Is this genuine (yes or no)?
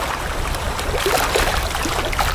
yes